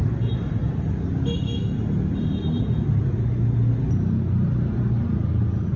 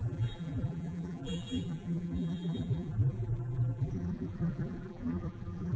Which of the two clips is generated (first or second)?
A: second